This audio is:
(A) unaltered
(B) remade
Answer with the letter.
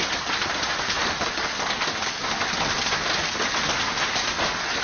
A